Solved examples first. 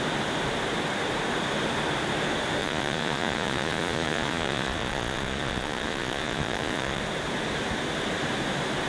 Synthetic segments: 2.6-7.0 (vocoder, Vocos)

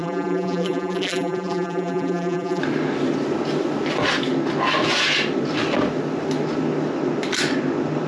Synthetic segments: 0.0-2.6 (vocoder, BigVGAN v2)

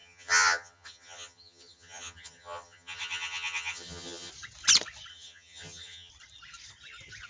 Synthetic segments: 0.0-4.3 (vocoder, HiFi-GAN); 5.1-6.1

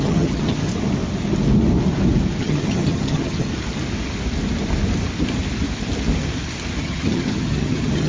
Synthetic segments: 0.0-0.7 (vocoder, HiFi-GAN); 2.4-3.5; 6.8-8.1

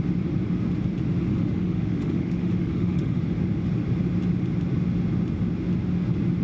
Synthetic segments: 1.3-3.2 (autoencoder, DAC-VAE)

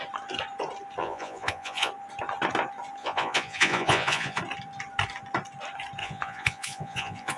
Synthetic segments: 1.0-1.9 (vocoder, Vocos); 3.0-4.4; 6.0-7.4